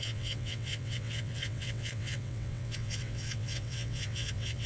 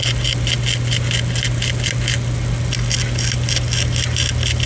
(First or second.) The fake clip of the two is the first